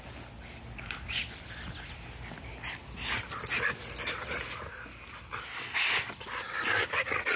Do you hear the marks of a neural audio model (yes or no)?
no